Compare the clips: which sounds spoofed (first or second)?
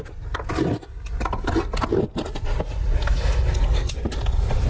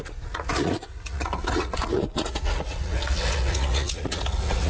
second